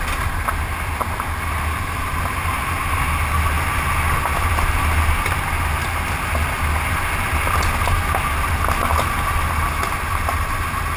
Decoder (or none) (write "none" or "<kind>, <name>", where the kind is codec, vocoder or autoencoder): none